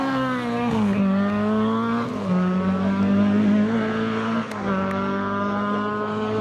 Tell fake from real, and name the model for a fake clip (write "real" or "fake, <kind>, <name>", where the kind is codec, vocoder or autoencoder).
fake, codec, DAC